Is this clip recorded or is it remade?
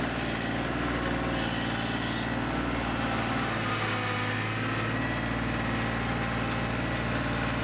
recorded